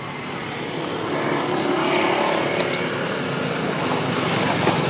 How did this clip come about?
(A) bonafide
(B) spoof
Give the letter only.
A